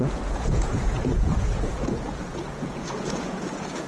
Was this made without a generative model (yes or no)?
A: no